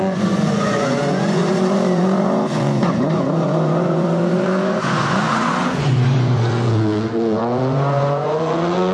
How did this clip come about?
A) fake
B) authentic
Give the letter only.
A